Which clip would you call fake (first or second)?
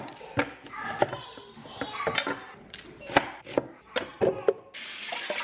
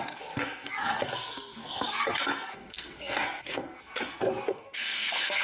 second